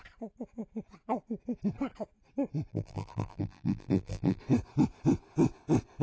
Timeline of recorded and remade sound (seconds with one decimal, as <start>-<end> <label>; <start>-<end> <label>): 0.0-2.7 recorded; 2.7-4.4 remade; 4.4-6.0 recorded